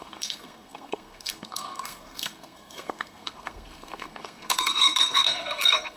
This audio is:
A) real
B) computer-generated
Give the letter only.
B